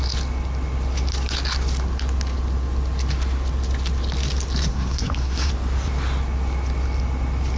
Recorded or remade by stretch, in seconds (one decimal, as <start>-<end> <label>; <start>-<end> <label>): 0.0-4.7 recorded; 4.7-5.5 remade; 5.5-7.6 recorded